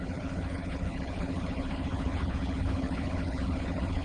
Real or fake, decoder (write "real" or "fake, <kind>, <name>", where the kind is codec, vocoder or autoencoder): fake, codec, HILCodec